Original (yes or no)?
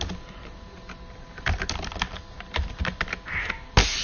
yes